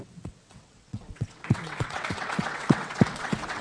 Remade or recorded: remade